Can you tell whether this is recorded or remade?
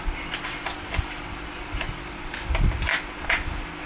recorded